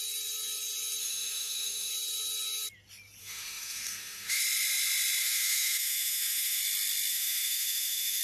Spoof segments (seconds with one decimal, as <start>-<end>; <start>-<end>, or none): 1.0-1.9; 3.2-4.4; 5.2-6.6; 7.1-8.2